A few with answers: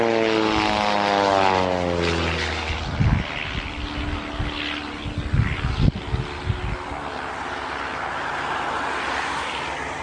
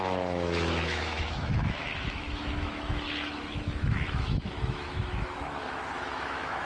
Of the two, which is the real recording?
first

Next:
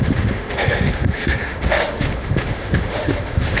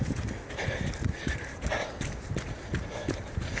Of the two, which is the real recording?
second